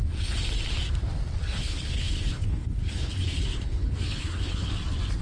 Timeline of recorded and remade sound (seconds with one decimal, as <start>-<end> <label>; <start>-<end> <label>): 0.0-1.6 recorded; 1.6-4.7 remade; 4.7-5.2 recorded